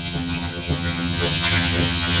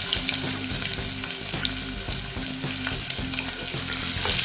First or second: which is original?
second